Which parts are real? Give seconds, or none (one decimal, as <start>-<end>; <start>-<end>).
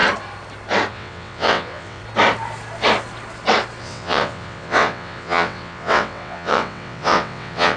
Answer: 0.0-0.9; 2.0-3.8